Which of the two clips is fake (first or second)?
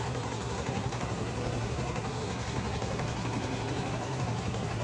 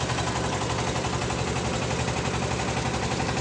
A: first